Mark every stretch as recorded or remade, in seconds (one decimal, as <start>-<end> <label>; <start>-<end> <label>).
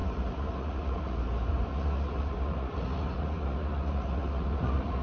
0.0-1.2 remade; 1.2-1.7 recorded; 1.7-5.0 remade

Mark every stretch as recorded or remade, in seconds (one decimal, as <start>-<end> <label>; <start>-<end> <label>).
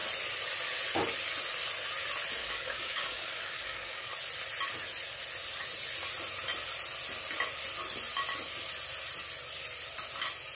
0.0-2.4 recorded; 2.4-4.1 remade; 4.1-10.5 recorded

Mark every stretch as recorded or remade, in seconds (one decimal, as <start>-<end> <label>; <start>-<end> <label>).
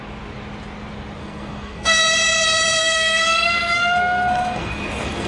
0.0-1.2 recorded; 1.2-2.0 remade; 2.0-2.8 recorded; 2.8-5.3 remade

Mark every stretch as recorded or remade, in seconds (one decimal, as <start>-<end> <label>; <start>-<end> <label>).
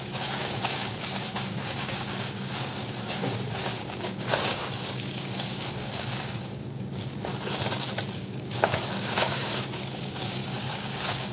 0.0-7.3 remade; 7.3-8.1 recorded; 8.1-11.3 remade